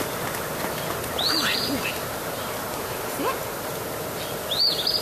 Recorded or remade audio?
recorded